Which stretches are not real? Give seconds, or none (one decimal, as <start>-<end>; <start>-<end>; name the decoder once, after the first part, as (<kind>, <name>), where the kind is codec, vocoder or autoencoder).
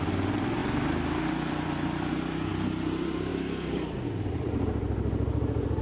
0.0-3.3 (vocoder, BigVGAN v2); 4.3-5.8